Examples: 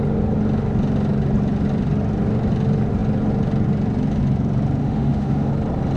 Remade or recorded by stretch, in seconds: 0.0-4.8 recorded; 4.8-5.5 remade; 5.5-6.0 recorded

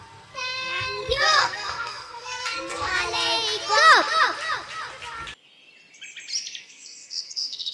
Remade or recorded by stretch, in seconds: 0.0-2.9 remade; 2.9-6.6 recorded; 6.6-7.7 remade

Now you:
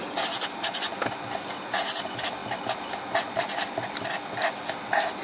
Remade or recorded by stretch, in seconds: 0.0-5.2 recorded